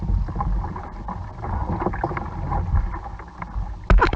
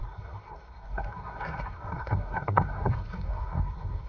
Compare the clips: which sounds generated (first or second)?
second